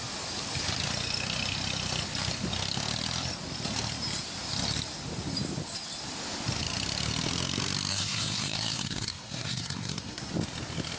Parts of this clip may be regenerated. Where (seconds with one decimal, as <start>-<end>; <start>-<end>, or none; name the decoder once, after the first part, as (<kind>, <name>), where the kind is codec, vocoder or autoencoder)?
7.9-10.3 (codec, SNAC)